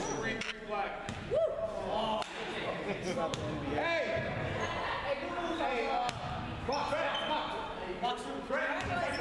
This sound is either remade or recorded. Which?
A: recorded